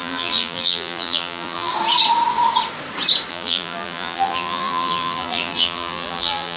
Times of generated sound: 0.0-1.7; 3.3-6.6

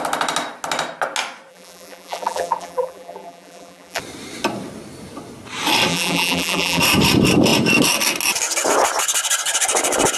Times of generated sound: 1.5-4.0; 5.9-6.8